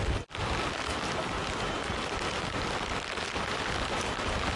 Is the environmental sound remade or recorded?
recorded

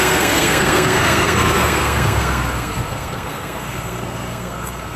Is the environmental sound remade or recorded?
remade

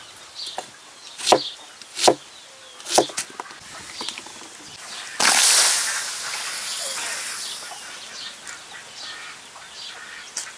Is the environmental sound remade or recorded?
recorded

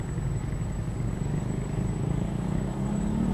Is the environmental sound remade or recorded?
remade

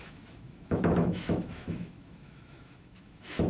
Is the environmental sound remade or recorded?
remade